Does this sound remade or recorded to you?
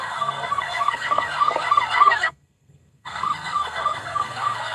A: remade